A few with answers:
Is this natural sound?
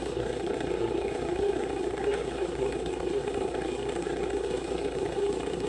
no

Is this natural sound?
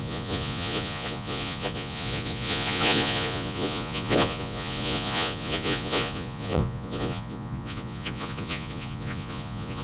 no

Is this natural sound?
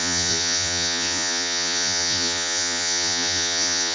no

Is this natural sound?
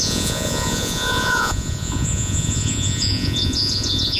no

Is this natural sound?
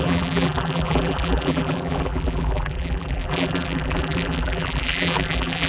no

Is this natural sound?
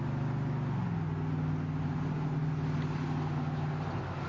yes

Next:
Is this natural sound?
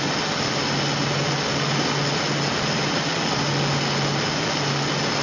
yes